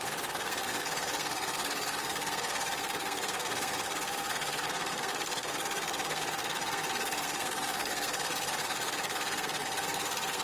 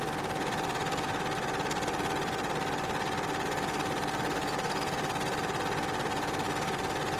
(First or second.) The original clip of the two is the second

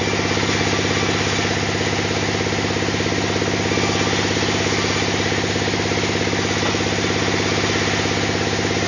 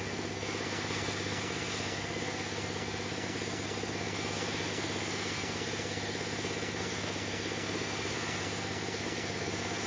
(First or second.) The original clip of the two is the first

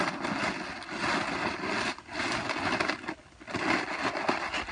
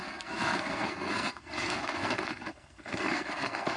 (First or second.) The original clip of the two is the first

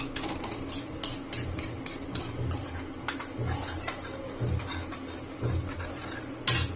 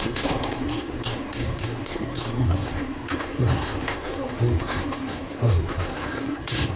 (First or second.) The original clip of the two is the first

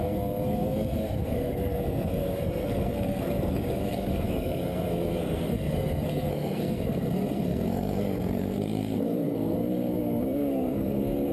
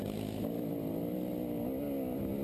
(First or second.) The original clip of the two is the second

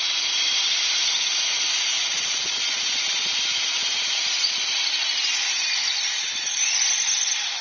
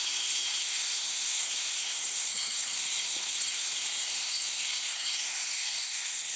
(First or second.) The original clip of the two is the first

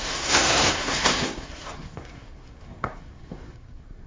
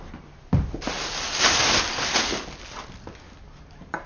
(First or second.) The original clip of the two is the second